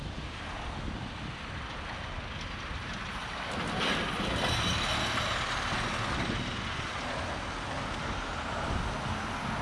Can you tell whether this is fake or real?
real